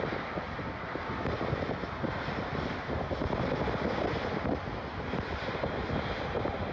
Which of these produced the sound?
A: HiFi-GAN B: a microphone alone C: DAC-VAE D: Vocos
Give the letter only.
B